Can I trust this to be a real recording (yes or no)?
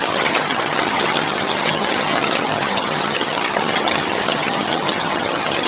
no